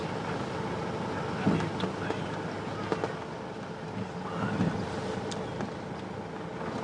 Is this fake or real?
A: real